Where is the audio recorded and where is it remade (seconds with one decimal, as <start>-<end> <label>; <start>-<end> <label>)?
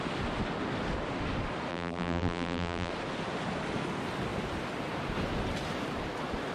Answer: 0.0-1.7 recorded; 1.7-2.9 remade; 2.9-6.5 recorded